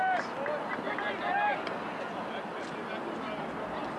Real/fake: real